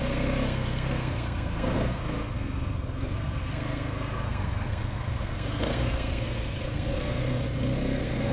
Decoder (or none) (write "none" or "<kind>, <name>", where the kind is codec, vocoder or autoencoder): codec, SNAC